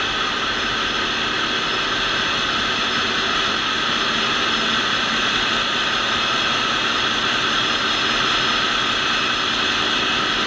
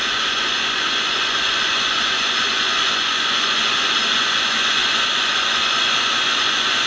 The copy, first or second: second